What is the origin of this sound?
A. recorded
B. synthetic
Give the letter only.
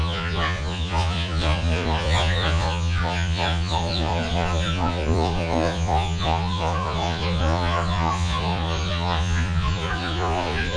B